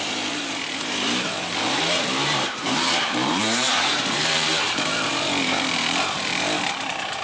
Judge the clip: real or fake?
fake